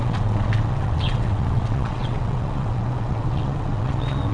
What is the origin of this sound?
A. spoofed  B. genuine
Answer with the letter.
A